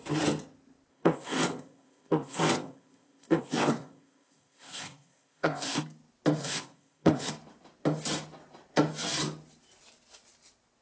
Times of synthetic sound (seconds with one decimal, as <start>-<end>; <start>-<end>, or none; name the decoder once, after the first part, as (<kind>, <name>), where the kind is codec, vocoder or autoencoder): 0.9-5.8 (codec, ZipCodec); 6.4-7.3